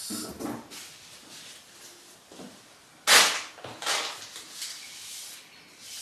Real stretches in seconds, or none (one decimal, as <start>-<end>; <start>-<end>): 0.0-6.0